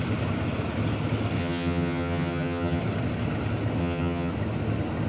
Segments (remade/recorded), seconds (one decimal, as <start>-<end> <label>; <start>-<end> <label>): 0.0-1.4 recorded; 1.4-2.8 remade; 2.8-3.8 recorded; 3.8-4.3 remade; 4.3-5.1 recorded